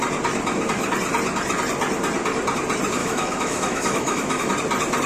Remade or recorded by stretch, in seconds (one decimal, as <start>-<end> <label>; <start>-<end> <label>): 0.0-3.0 recorded; 3.0-4.5 remade; 4.5-5.1 recorded